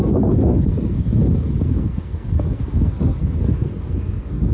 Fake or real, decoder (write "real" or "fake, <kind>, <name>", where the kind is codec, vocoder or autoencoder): fake, codec, SNAC